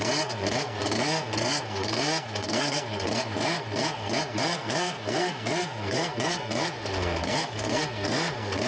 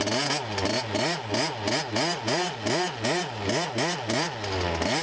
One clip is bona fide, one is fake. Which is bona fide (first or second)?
second